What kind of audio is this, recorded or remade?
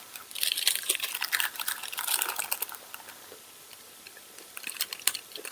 remade